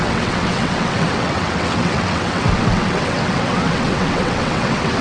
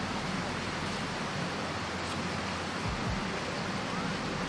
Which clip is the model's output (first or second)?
first